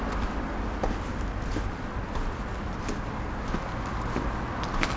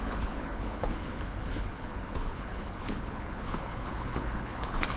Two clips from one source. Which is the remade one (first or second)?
second